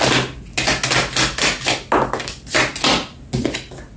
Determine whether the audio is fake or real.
real